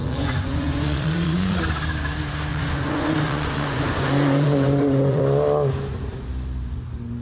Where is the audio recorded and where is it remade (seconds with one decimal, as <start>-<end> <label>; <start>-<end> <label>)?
0.0-1.6 remade; 1.6-2.5 recorded; 2.5-5.2 remade; 5.2-7.2 recorded